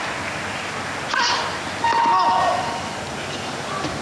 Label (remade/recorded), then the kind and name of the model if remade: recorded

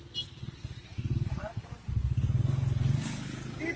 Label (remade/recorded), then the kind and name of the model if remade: recorded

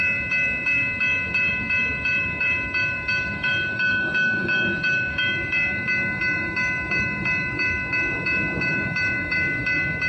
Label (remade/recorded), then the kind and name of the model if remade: remade, autoencoder, DAC-VAE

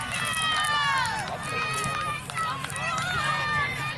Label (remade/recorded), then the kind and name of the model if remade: recorded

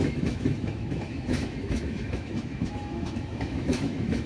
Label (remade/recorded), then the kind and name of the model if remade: remade, autoencoder, DAC-VAE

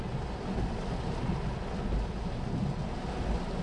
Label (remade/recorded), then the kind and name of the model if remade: recorded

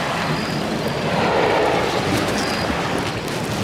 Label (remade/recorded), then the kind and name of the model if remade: recorded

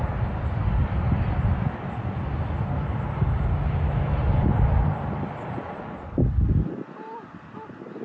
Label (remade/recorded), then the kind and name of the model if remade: recorded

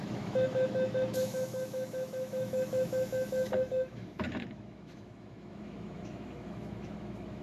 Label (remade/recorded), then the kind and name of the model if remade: remade, autoencoder, DAC-VAE